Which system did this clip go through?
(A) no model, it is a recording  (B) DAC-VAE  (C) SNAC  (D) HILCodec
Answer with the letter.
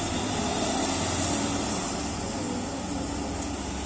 A